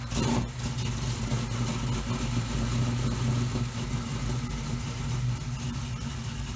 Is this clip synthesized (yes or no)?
no